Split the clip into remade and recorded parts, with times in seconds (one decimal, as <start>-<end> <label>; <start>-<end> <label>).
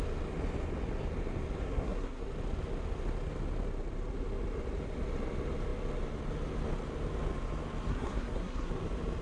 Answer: 0.0-1.6 recorded; 1.6-2.2 remade; 2.2-7.9 recorded; 7.9-8.7 remade; 8.7-9.2 recorded